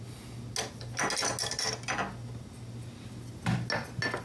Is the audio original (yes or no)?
yes